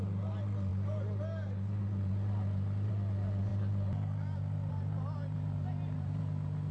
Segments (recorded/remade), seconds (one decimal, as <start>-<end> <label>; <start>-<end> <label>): 0.0-6.7 recorded